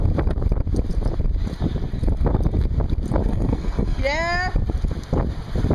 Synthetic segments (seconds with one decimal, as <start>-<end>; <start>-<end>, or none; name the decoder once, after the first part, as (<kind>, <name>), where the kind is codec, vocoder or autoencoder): 3.2-4.0 (codec, SNAC)